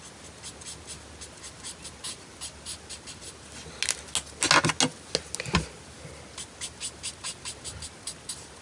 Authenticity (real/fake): real